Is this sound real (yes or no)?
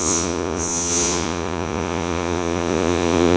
no